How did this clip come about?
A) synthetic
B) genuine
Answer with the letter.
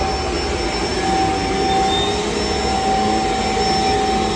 B